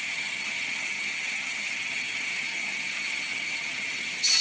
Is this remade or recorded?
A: remade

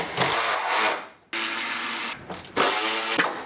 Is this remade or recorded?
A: recorded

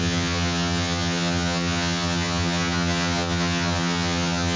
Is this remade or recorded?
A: remade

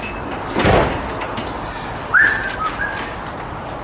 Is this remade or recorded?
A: recorded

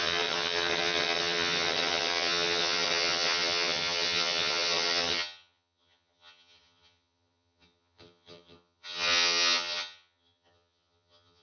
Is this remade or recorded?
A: remade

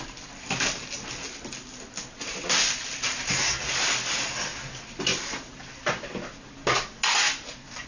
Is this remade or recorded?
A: recorded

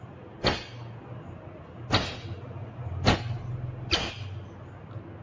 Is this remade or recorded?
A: recorded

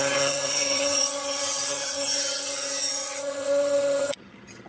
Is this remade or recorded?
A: remade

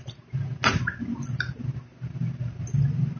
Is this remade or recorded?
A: recorded